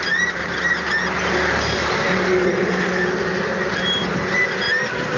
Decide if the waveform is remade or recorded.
recorded